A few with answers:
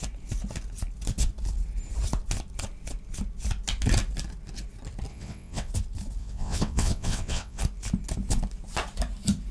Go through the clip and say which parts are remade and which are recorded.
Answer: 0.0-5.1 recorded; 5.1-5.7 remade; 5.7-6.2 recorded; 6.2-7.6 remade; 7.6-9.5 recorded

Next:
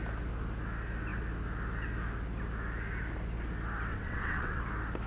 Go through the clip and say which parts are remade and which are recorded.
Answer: 0.0-3.9 recorded; 3.9-4.6 remade; 4.6-5.1 recorded